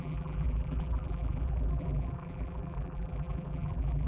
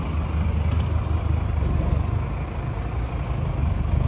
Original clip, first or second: second